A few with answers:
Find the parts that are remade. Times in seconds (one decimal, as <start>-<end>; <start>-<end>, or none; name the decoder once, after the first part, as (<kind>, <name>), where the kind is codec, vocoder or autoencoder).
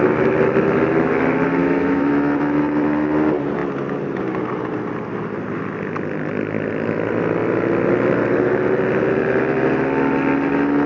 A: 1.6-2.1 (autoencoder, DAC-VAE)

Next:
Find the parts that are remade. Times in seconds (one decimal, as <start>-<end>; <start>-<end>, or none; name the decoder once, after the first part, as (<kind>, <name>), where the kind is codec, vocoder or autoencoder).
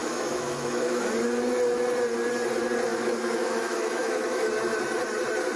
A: 0.0-1.0 (autoencoder, DAC-VAE); 2.9-4.5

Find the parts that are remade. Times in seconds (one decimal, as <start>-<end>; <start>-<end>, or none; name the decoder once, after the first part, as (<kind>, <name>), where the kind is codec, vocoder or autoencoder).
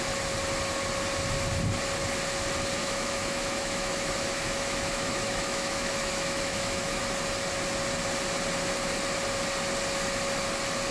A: 2.8-7.0 (autoencoder, DAC-VAE)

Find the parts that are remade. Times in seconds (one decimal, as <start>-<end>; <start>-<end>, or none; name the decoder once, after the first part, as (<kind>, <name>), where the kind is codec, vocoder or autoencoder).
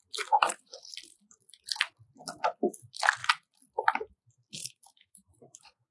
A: 4.6-5.9 (autoencoder, DAC-VAE)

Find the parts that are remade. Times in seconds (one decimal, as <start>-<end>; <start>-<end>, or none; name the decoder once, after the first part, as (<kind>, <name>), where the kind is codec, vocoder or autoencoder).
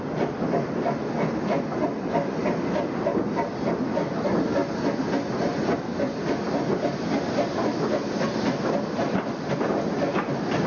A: none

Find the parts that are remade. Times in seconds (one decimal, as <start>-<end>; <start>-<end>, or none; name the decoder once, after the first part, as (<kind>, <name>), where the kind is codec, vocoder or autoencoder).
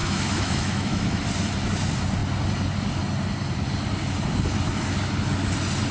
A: 0.0-1.2 (autoencoder, DAC-VAE)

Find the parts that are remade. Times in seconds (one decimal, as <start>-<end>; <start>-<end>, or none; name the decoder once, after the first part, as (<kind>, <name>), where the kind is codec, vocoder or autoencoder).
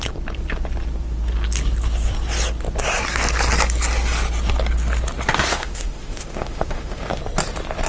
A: 5.5-7.2 (autoencoder, DAC-VAE)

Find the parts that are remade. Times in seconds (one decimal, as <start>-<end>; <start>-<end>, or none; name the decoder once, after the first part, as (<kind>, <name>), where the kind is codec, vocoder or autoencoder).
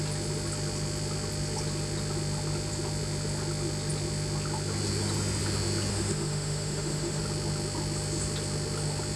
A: 5.9-7.2 (autoencoder, DAC-VAE)